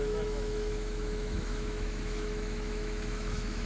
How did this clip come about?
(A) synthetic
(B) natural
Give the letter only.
A